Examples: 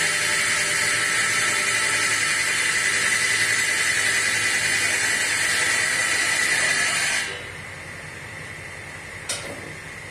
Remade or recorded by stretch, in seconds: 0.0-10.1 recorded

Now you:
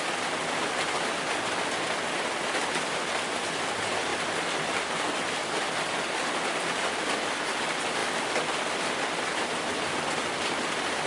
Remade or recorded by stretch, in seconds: 0.0-4.1 remade; 4.1-4.7 recorded; 4.7-5.6 remade; 5.6-6.2 recorded; 6.2-11.1 remade

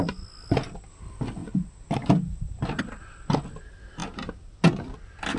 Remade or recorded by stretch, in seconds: 0.0-1.4 recorded; 1.4-2.8 remade; 2.8-4.0 recorded; 4.0-4.5 remade; 4.5-5.4 recorded

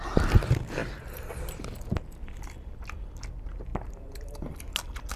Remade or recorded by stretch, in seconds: 0.0-3.7 recorded; 3.7-4.5 remade; 4.5-5.2 recorded

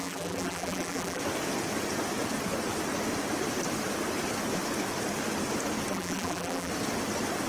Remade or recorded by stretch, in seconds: 0.0-1.2 remade; 1.2-5.9 recorded; 5.9-6.7 remade; 6.7-7.5 recorded

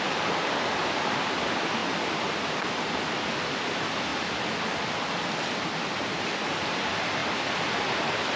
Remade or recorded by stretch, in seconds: 0.0-0.8 recorded; 0.8-1.3 remade; 1.3-1.8 recorded; 1.8-2.5 remade; 2.5-8.4 recorded